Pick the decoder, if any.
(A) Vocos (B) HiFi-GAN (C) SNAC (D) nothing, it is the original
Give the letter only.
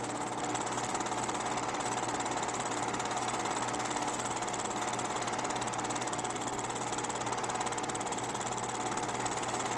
D